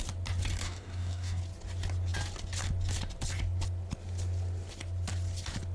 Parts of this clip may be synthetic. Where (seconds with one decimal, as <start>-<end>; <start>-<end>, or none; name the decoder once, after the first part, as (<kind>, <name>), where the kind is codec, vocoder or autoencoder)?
0.6-1.4 (codec, DAC)